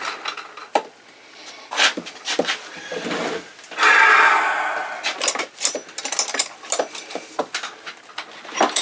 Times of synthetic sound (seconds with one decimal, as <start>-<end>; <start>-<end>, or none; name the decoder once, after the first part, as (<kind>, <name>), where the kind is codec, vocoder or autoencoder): none